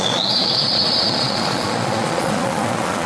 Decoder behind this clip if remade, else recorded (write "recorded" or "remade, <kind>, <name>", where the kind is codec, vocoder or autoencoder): remade, vocoder, Vocos